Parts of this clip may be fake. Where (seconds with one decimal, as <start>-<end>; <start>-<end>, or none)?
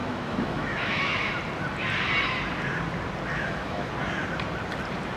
0.0-1.3; 3.3-3.9